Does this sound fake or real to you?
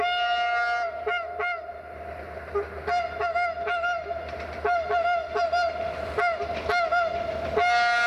real